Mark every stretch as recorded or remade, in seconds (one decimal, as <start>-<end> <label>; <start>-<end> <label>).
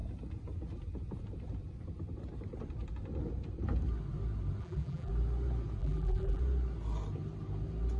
0.0-4.6 recorded; 4.6-5.1 remade; 5.1-5.8 recorded; 5.8-6.4 remade; 6.4-8.0 recorded